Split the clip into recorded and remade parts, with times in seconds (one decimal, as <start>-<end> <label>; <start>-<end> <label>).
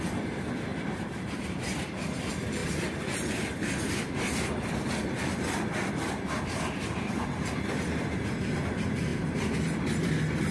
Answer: 0.0-0.7 recorded; 0.7-2.2 remade; 2.2-2.6 recorded; 2.6-6.1 remade; 6.1-10.5 recorded